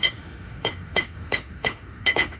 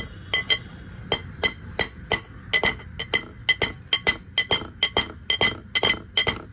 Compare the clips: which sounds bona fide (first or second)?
second